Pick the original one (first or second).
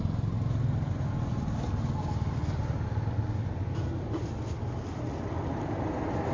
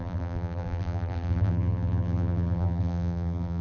first